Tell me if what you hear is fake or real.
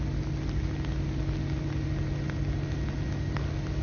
real